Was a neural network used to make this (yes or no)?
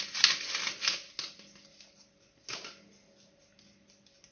no